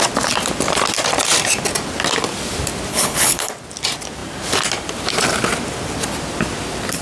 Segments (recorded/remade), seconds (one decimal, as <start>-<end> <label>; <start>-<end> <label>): 0.0-2.9 recorded; 2.9-3.5 remade; 3.5-7.0 recorded